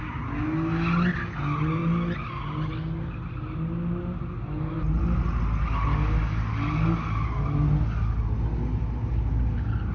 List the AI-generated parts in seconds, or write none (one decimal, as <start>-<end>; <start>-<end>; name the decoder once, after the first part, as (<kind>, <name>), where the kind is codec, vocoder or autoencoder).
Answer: none